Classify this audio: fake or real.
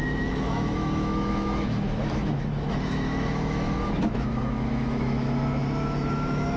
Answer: fake